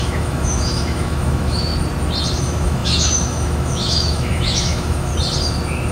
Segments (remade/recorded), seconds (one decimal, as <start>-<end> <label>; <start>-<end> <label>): 0.0-1.7 remade; 1.7-2.4 recorded; 2.4-5.1 remade; 5.1-5.9 recorded